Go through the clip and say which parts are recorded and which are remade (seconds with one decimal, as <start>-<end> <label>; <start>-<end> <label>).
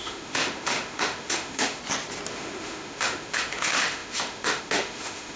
0.0-1.8 remade; 1.8-2.3 recorded; 2.3-5.4 remade